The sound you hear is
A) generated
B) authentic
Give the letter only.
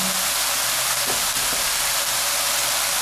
B